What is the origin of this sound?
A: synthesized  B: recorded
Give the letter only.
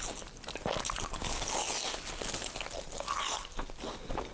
B